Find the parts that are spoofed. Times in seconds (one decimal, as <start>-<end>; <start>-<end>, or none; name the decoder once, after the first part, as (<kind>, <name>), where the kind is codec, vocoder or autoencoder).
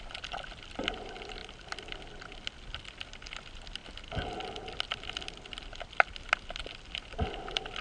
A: none